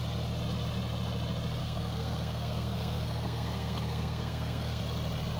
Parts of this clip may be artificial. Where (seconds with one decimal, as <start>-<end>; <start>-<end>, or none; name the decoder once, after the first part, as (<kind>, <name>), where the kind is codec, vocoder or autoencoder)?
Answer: 1.6-4.8 (codec, SNAC)